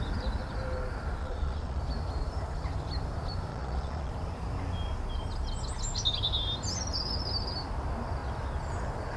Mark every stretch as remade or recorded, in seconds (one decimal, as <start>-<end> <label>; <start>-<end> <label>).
0.0-1.2 recorded; 1.2-1.8 remade; 1.8-3.5 recorded; 3.5-4.1 remade; 4.1-9.2 recorded